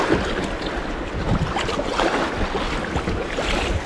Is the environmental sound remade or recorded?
recorded